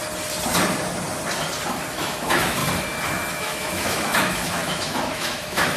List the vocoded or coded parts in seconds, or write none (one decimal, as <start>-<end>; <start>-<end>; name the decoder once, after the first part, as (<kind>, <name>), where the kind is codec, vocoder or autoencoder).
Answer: 1.9-2.6 (autoencoder, DAC-VAE); 3.3-5.8